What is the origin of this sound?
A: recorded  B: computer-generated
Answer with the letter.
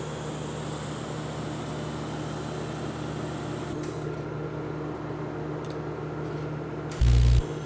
A